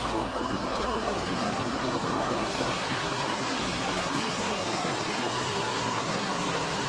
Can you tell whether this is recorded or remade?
remade